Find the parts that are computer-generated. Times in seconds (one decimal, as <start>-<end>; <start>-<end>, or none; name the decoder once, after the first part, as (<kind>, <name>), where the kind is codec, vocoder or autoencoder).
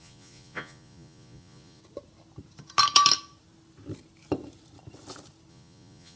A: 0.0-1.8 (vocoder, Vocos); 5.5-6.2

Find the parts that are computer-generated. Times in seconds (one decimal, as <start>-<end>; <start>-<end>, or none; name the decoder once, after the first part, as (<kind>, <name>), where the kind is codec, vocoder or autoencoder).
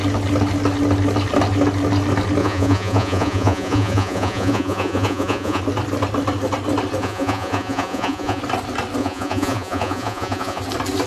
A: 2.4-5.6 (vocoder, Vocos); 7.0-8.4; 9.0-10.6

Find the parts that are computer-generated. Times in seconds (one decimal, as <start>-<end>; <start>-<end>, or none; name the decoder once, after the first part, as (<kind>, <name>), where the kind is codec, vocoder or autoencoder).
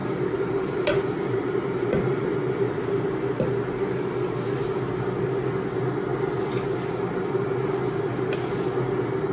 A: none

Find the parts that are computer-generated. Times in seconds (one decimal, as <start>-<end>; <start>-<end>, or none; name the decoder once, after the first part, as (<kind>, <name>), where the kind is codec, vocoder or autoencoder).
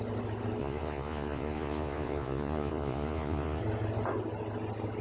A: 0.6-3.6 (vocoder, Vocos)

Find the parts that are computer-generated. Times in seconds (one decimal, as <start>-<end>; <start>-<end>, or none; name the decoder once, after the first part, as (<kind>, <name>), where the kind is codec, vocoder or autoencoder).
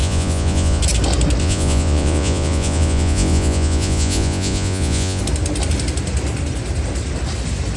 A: 0.0-0.8 (vocoder, Vocos); 1.4-5.2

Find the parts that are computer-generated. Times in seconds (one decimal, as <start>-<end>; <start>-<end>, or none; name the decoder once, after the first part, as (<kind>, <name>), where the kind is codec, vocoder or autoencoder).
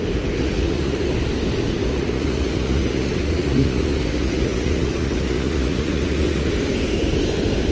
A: 0.4-1.1 (vocoder, Vocos); 1.9-6.5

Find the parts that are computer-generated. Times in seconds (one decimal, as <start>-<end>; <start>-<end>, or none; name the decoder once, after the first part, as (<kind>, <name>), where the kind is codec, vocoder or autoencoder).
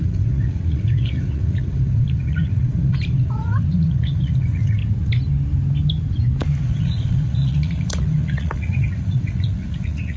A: 0.0-4.8 (vocoder, Vocos); 6.6-10.2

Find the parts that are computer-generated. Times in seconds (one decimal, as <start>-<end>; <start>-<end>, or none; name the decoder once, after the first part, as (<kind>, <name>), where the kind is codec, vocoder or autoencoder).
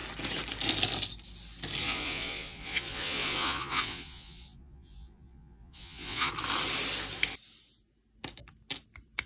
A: 1.8-6.3 (vocoder, Vocos)